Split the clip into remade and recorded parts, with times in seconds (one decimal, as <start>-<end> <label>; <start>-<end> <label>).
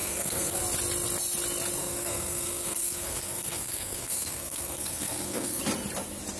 0.0-0.6 remade; 0.6-1.8 recorded; 1.8-5.6 remade; 5.6-6.4 recorded